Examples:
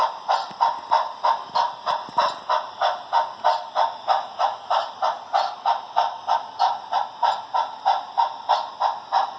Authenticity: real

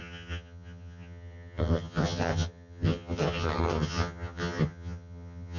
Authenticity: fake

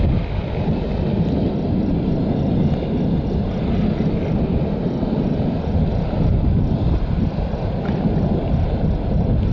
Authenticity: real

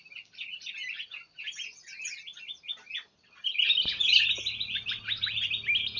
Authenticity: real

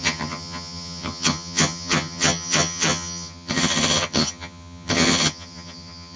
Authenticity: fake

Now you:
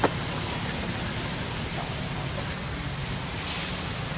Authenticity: real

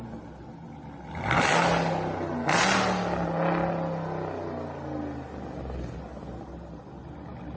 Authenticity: real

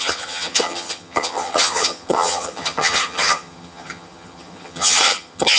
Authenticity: fake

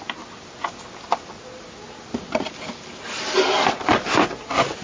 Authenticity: real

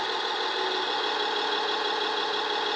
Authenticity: real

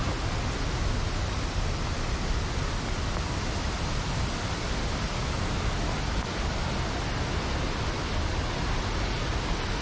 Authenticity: real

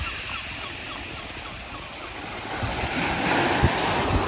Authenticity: real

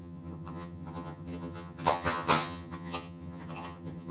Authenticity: fake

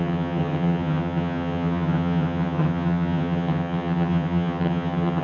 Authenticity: fake